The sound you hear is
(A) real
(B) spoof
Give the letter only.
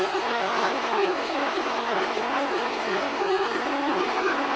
B